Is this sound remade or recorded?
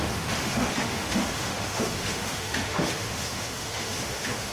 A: remade